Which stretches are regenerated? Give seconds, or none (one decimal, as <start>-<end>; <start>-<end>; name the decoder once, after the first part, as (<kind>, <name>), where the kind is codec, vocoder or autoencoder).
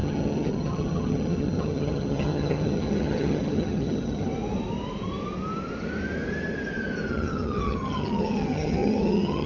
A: 0.0-4.3 (vocoder, HiFi-GAN); 7.1-9.5